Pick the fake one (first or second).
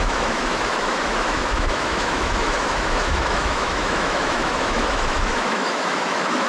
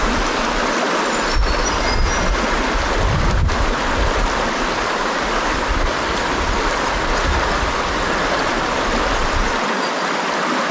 first